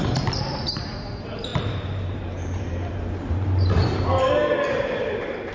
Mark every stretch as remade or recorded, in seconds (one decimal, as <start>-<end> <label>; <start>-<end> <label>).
0.0-3.8 remade; 3.8-5.5 recorded